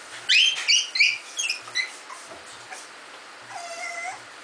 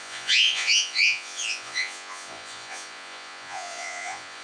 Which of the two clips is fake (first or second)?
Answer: second